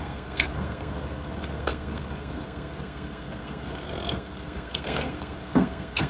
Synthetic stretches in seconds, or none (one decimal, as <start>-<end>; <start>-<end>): 0.0-6.1